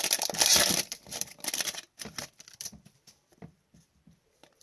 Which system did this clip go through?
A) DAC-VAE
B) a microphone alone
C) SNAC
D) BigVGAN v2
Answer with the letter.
D